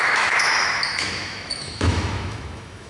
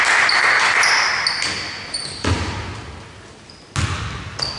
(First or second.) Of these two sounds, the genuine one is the second